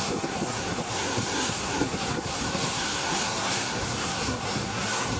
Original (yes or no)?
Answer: no